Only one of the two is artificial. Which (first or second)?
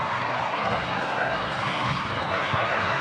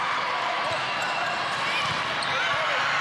first